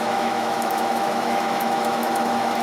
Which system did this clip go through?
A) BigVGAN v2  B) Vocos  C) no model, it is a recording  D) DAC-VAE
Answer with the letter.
D